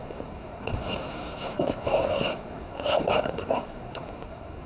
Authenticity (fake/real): fake